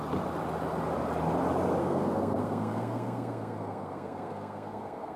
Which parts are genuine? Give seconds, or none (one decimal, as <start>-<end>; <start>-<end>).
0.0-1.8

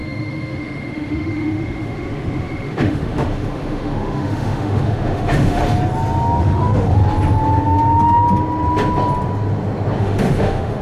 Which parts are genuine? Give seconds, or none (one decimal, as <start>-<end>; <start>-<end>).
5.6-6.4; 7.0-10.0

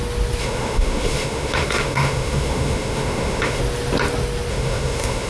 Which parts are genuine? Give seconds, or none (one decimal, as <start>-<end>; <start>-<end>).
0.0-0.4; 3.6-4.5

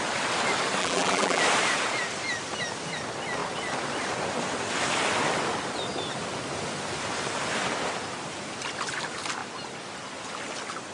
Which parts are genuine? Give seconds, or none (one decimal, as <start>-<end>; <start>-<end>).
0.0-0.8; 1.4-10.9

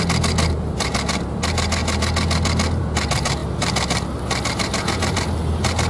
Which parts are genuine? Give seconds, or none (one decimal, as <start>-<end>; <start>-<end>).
0.0-5.9